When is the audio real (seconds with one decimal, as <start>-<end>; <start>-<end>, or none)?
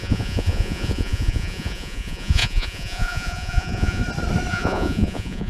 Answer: 4.0-4.5